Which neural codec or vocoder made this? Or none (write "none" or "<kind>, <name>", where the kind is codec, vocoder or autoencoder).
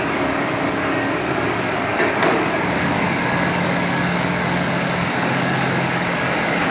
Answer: codec, DAC